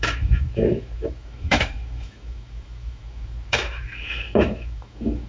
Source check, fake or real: fake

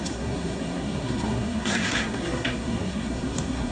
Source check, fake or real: fake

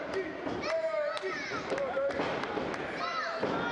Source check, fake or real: real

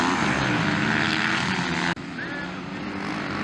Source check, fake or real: real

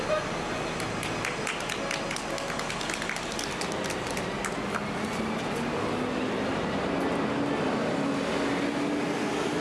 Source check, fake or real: real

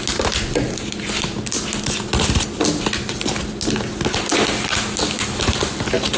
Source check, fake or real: real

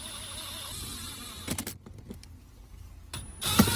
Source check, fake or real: real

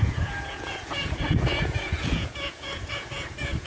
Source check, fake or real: fake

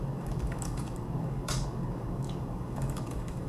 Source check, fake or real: fake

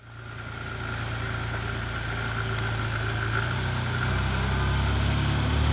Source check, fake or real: real